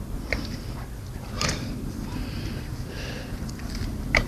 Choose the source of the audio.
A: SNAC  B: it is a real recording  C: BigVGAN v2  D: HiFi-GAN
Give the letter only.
C